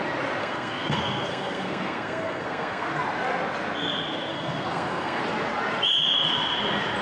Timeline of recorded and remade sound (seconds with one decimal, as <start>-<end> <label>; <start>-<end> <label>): 0.0-0.4 recorded; 0.4-2.9 remade; 2.9-4.3 recorded; 4.3-5.2 remade; 5.2-7.0 recorded